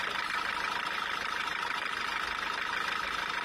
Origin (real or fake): real